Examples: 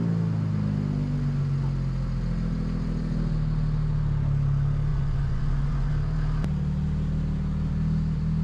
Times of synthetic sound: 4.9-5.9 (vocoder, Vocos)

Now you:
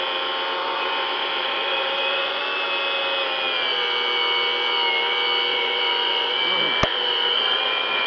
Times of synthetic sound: 0.6-2.4 (vocoder, Vocos); 5.5-6.4; 6.9-8.1

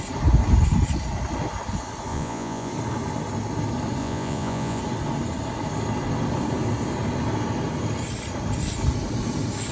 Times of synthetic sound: 2.1-2.7 (vocoder, Vocos); 4.0-4.8

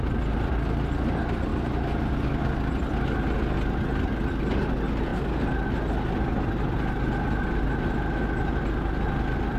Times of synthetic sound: none

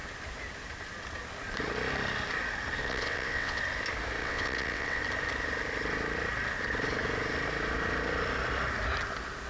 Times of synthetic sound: 2.8-3.6 (vocoder, WaveNeXt); 4.2-5.0

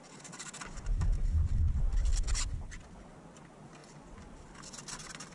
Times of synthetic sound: 3.8-4.3 (vocoder, Vocos)

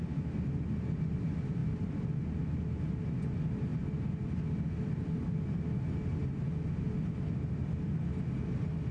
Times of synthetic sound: none